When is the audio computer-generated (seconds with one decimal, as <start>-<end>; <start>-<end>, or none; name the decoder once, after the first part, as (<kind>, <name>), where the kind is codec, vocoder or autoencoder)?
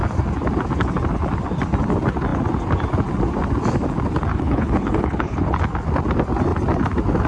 4.3-5.6 (codec, HILCodec)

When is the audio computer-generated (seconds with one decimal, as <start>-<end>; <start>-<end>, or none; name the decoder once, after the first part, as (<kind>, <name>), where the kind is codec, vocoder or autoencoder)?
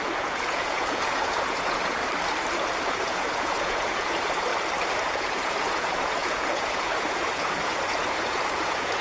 0.0-2.0 (vocoder, Vocos); 2.9-4.5; 5.1-9.0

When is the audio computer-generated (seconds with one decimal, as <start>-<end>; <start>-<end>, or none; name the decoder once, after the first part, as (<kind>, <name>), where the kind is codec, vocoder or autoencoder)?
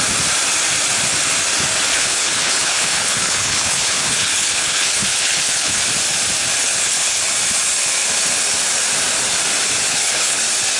1.9-5.8 (codec, HILCodec); 6.6-7.2; 9.9-10.4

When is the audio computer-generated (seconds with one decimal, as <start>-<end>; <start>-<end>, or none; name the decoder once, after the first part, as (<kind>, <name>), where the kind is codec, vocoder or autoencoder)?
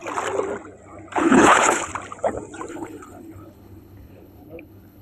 1.2-1.9 (codec, HILCodec); 2.7-5.0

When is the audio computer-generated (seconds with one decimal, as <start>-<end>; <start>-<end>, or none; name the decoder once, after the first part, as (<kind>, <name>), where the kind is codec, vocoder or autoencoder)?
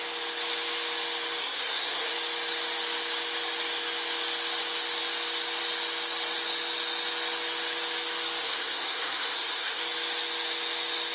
1.4-2.1 (codec, SNAC); 8.4-9.8